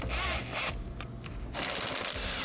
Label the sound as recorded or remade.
recorded